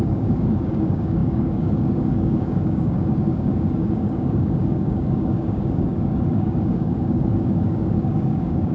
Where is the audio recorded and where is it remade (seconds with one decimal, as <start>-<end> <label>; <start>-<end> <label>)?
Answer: 0.0-8.7 remade